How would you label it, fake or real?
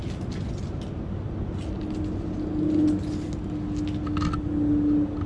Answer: real